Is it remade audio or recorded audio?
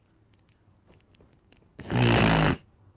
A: recorded